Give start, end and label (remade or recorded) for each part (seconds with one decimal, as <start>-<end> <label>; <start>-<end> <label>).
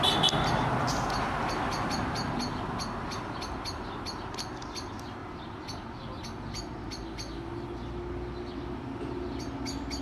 0.0-10.0 recorded